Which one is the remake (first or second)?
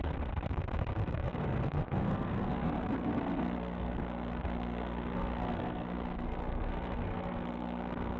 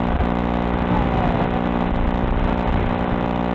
first